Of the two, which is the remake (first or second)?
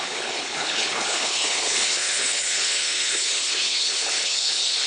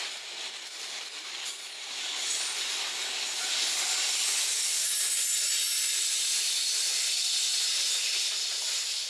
first